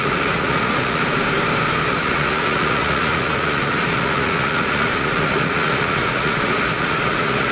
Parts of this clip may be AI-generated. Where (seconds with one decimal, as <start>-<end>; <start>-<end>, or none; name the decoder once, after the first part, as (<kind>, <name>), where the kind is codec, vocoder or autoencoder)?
0.0-1.0 (vocoder, Vocos); 1.9-7.5